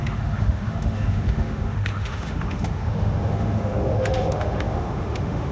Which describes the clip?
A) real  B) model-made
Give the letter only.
B